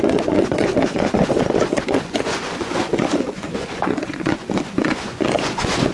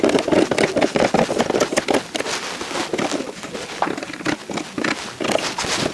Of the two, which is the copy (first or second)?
first